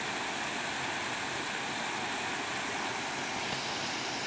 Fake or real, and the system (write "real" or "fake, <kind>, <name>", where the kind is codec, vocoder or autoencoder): real